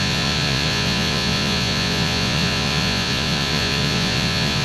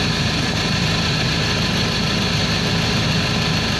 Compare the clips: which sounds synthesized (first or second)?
first